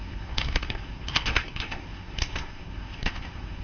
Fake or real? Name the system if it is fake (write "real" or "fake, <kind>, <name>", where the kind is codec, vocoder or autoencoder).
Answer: fake, codec, SNAC